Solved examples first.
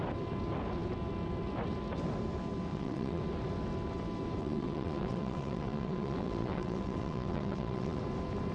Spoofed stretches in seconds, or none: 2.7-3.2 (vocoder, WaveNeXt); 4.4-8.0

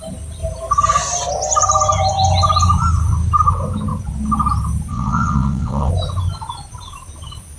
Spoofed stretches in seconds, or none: 4.9-5.9 (vocoder, WaveNeXt)

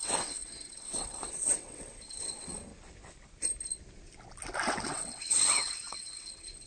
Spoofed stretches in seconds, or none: 0.0-2.7 (vocoder, WaveNeXt); 4.7-6.7

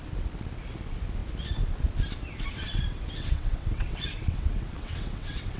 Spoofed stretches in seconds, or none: 2.5-5.6 (vocoder, WaveNeXt)